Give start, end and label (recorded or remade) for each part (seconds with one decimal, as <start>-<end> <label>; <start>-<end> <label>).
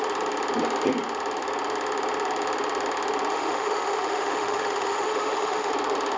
0.0-3.3 recorded; 3.3-5.7 remade; 5.7-6.2 recorded